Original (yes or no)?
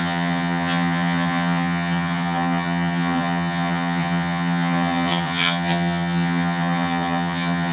no